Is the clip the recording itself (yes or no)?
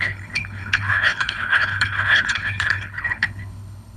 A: no